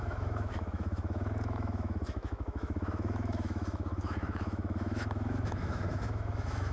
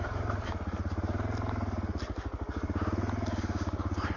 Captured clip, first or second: second